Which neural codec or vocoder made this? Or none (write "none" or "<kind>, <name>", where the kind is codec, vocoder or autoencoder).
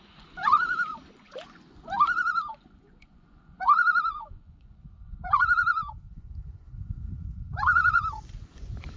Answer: vocoder, Vocos